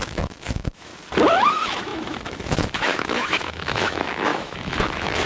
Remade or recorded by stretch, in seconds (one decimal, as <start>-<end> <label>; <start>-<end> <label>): 0.0-0.9 remade; 0.9-1.5 recorded; 1.5-5.3 remade